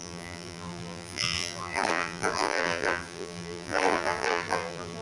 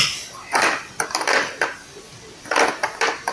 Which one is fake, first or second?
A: first